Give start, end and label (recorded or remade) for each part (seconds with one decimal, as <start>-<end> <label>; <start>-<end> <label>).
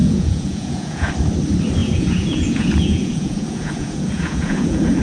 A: 0.0-1.1 remade; 1.1-1.8 recorded; 1.8-5.0 remade